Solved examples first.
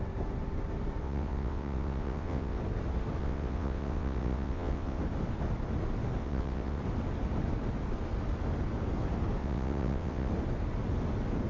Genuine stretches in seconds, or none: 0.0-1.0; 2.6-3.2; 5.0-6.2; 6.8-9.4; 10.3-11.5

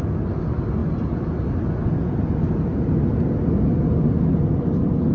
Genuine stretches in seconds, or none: 0.0-5.1